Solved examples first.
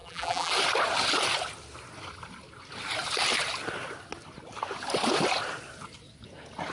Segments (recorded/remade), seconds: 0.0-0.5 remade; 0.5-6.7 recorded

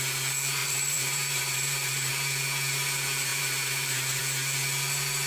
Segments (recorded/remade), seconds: 0.0-0.6 recorded; 0.6-2.1 remade; 2.1-3.3 recorded; 3.3-4.2 remade; 4.2-5.3 recorded